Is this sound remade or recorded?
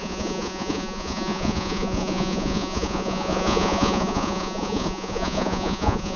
remade